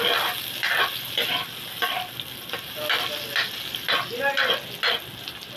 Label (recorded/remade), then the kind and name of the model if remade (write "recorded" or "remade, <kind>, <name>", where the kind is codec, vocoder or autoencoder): recorded